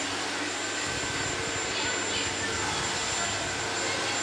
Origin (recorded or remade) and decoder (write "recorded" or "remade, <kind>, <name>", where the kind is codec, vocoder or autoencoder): recorded